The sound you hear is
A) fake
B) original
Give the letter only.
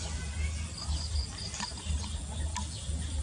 B